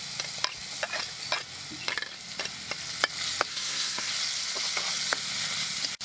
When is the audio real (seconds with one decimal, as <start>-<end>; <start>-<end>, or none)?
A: 0.0-3.5; 4.1-6.0